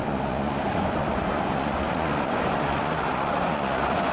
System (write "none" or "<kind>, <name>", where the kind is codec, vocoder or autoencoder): vocoder, Vocos